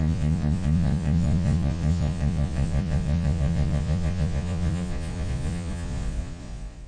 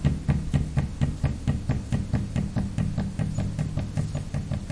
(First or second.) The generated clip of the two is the first